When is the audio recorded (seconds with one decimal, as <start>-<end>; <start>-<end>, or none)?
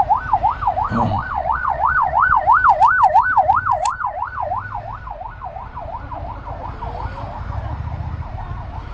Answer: 0.0-1.1; 2.4-8.9